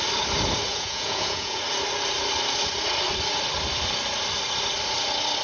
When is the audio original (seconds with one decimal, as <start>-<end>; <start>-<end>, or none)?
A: 0.0-0.7; 1.6-5.4